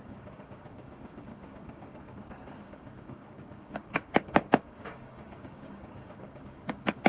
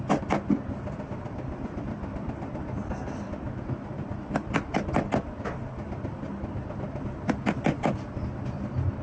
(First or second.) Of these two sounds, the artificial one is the first